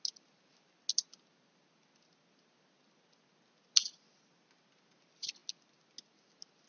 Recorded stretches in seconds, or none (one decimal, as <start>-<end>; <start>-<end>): 0.0-6.7